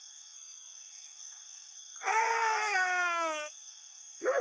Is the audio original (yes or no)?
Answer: no